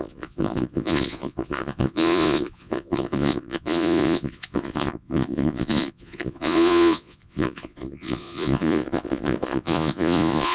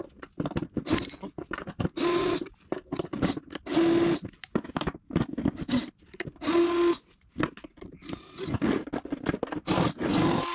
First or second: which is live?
second